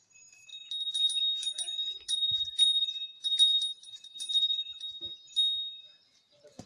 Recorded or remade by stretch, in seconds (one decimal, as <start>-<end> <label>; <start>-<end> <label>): 0.0-0.5 remade; 0.5-1.2 recorded; 1.2-4.7 remade; 4.7-5.8 recorded; 5.8-6.7 remade